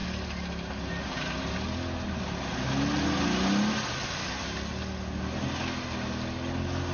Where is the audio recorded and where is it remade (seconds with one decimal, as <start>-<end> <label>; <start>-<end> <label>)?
0.0-6.9 recorded